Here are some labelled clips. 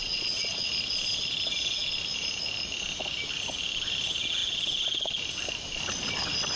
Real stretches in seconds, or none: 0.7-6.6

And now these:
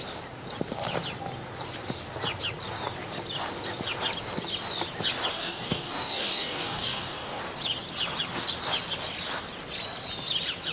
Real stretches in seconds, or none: 0.0-5.3; 7.4-10.7

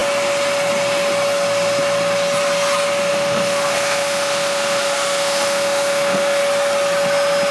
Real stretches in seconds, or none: 0.0-3.1; 6.4-7.5

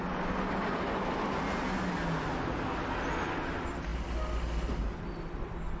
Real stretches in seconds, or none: 0.0-5.8